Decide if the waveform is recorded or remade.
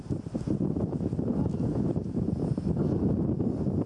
recorded